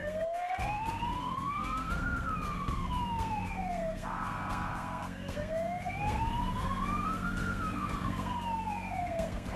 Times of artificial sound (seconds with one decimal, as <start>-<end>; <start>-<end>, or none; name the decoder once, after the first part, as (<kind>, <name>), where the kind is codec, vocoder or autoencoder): 0.0-9.6 (codec, SNAC)